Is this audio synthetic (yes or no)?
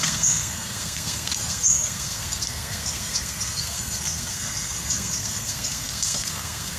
yes